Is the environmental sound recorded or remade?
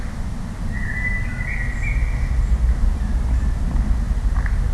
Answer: recorded